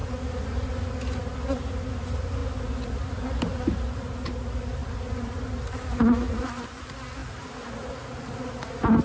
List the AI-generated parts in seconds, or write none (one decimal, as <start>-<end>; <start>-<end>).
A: none